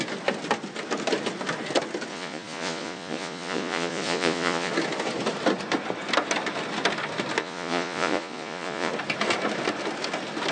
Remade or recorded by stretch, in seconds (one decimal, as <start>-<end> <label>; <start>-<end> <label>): 0.0-2.1 recorded; 2.1-4.7 remade; 4.7-7.4 recorded; 7.4-8.9 remade; 8.9-10.5 recorded